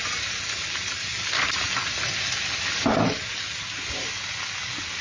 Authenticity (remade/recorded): recorded